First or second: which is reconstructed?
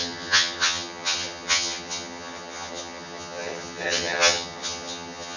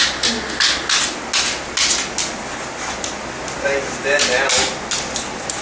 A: first